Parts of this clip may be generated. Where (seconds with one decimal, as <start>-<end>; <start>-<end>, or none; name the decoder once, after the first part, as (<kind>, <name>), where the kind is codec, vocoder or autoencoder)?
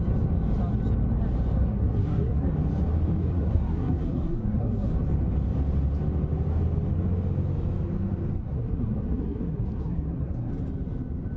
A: 1.6-2.4 (codec, SNAC); 3.2-4.9; 8.4-10.5